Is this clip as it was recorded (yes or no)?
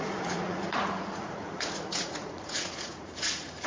no